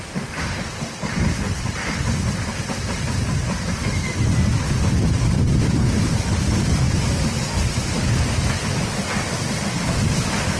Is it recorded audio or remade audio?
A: recorded